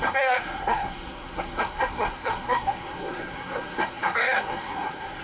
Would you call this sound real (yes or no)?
no